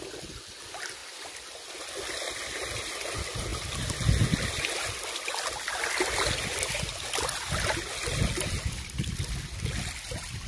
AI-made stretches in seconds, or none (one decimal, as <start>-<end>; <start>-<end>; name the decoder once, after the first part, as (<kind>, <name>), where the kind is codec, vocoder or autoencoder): 1.0-1.7 (vocoder, BigVGAN v2)

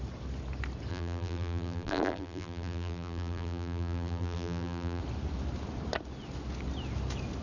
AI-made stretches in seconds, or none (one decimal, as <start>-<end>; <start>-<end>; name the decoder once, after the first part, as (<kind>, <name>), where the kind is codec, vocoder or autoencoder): 0.9-5.0 (vocoder, BigVGAN v2)

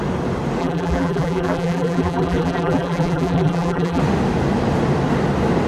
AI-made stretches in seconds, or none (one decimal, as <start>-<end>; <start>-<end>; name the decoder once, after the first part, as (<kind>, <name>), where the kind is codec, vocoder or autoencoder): 0.6-4.0 (vocoder, BigVGAN v2)

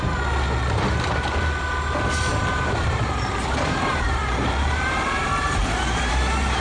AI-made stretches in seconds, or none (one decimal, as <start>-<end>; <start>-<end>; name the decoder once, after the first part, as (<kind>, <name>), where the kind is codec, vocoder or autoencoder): 2.4-6.1 (vocoder, BigVGAN v2)

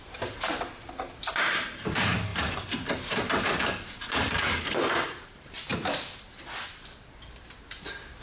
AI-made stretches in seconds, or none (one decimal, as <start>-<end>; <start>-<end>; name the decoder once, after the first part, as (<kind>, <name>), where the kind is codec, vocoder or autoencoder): 0.0-5.7 (vocoder, BigVGAN v2); 7.1-8.2